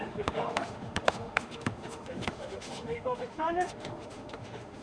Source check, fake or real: fake